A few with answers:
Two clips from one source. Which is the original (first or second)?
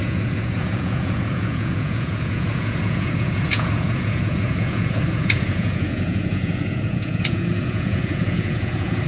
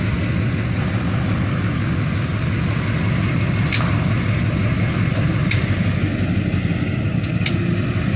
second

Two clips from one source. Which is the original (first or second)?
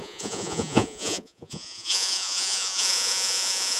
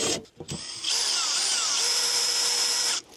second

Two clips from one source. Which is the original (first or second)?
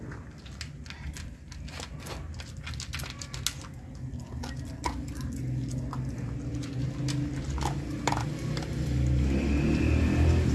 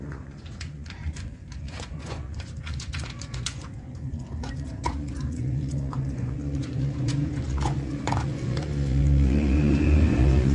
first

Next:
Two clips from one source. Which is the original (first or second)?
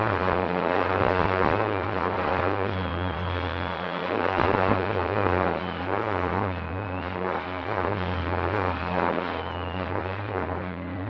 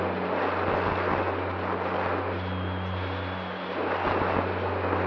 second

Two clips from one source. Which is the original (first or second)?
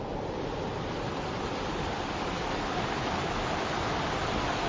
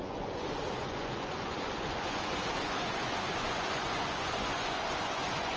first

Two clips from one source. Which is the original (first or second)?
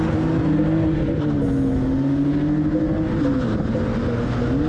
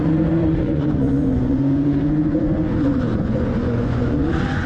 first